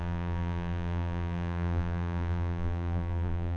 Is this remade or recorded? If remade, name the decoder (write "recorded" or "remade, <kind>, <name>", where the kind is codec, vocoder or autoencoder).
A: remade, vocoder, BigVGAN v2